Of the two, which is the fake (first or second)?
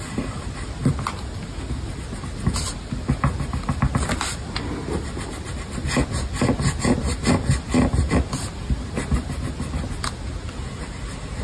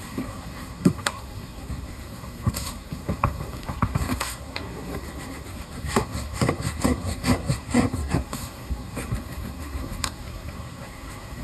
second